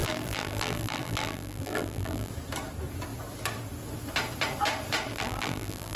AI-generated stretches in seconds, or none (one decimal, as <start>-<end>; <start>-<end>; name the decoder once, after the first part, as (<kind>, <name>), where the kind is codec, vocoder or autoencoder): 0.0-2.3 (vocoder, BigVGAN v2); 5.1-6.0